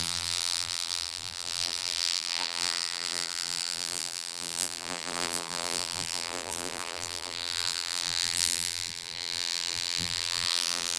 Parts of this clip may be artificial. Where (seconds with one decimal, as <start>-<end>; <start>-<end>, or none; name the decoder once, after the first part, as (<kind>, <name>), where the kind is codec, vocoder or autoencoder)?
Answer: 0.0-11.0 (vocoder, BigVGAN v2)